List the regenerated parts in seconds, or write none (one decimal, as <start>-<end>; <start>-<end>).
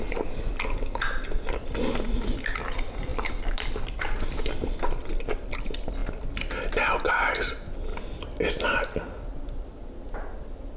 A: none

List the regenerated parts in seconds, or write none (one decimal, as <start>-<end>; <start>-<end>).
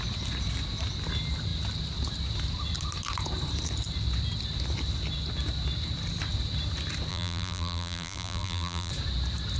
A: 7.1-8.9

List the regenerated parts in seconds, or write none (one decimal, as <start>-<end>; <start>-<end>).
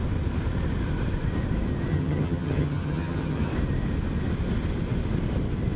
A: 1.9-3.5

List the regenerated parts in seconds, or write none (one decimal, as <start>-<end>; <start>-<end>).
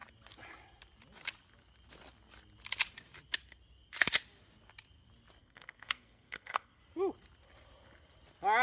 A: 5.4-6.8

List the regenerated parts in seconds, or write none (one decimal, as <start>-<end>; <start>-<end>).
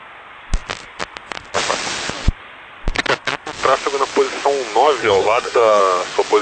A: 5.0-5.8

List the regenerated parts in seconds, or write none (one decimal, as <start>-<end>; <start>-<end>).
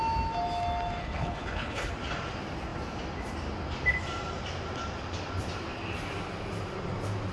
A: 1.0-1.9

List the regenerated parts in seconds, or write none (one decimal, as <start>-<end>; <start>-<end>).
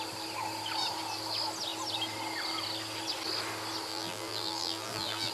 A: 3.9-5.3